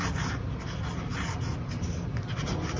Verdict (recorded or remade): recorded